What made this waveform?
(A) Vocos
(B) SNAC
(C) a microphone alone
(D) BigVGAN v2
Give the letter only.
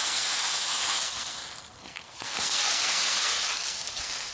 B